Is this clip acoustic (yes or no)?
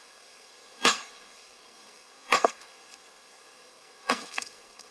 no